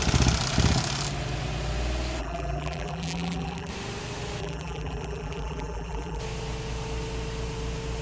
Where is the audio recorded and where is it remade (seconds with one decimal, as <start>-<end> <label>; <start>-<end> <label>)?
0.0-2.2 recorded; 2.2-3.7 remade; 3.7-4.4 recorded; 4.4-6.2 remade; 6.2-8.0 recorded